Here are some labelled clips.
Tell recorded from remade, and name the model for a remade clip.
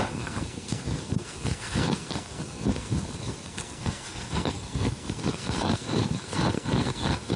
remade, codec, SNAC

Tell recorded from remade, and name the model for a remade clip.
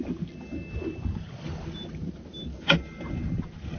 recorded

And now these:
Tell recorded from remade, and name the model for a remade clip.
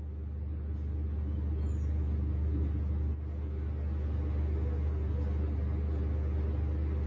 recorded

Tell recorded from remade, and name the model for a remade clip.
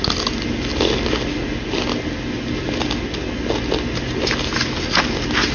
recorded